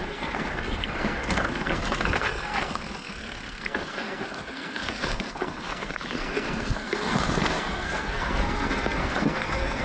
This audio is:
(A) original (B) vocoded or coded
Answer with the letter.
B